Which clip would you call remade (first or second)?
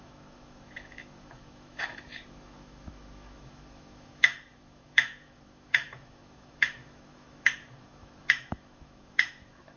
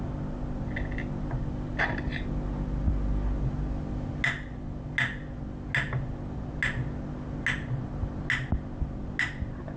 first